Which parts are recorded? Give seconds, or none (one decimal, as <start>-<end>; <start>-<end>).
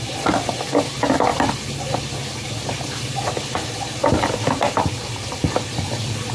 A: 0.0-6.3